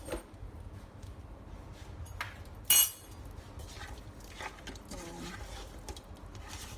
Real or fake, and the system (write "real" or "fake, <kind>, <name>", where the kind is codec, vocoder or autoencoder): real